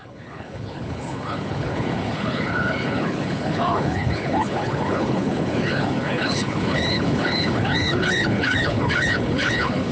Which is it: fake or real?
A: fake